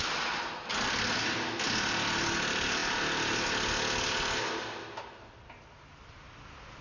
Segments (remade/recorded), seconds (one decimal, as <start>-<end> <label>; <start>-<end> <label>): 0.0-6.8 recorded